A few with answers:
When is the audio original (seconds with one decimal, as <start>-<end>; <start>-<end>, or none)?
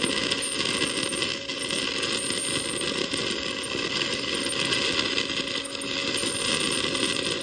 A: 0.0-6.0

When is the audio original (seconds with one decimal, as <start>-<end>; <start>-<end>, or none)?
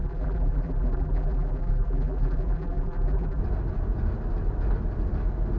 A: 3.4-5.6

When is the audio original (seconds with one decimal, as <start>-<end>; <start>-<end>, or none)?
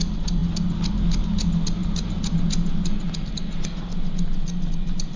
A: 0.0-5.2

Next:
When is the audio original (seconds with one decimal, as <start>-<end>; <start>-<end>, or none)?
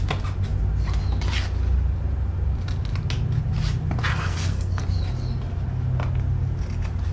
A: 0.0-4.1; 4.8-7.1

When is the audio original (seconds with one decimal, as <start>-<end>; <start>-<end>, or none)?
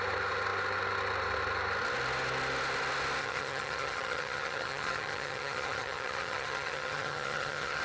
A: 0.0-3.2